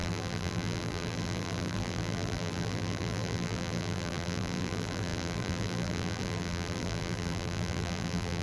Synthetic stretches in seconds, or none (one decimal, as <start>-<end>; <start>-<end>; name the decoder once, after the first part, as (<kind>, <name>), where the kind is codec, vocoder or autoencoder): 0.0-8.4 (vocoder, BigVGAN v2)